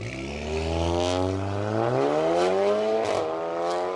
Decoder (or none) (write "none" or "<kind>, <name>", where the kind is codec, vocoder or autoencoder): none